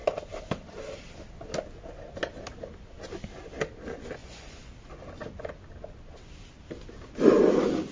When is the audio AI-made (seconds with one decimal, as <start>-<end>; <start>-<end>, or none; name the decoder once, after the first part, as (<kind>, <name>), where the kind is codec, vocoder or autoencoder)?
4.2-4.7 (vocoder, Vocos)